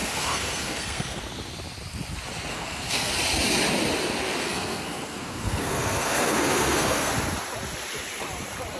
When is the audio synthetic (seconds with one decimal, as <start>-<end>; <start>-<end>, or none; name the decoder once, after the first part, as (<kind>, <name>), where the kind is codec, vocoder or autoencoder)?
0.0-1.2 (codec, SNAC); 2.5-3.1; 4.4-7.1